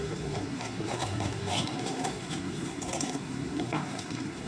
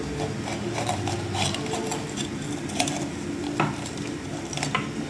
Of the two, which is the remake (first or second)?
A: first